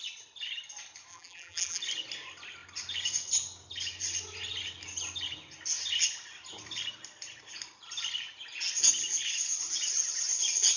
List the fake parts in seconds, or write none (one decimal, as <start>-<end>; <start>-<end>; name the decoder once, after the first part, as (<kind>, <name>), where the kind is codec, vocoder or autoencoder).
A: 1.1-1.8 (vocoder, BigVGAN v2)